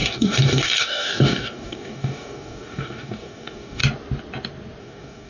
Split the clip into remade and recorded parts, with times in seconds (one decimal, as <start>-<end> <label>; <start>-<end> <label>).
0.0-3.8 remade; 3.8-4.8 recorded; 4.8-5.3 remade